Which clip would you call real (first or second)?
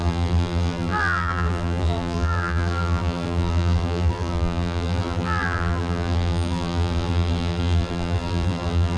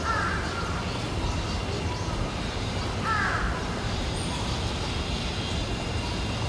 second